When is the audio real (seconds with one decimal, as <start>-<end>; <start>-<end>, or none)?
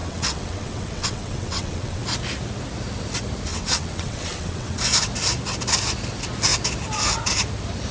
2.0-3.5; 4.8-7.9